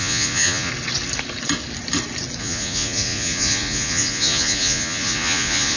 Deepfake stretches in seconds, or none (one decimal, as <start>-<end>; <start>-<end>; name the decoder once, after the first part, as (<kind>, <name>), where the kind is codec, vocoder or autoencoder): 0.0-0.7 (vocoder, Vocos); 2.4-5.8